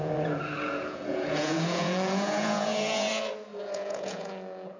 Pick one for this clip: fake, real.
fake